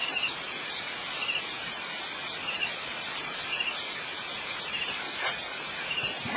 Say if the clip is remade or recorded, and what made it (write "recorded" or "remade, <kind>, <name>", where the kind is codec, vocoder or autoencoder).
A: remade, vocoder, BigVGAN v2